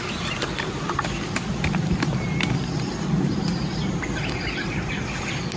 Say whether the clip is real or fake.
real